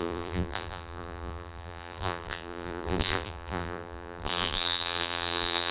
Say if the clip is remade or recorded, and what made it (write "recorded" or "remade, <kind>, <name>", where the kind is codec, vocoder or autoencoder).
remade, vocoder, BigVGAN v2